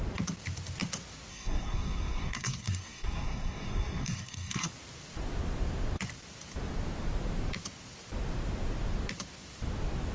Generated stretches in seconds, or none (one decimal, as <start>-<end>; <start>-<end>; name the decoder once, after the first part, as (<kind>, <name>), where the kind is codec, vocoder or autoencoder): 1.3-4.7 (codec, SNAC)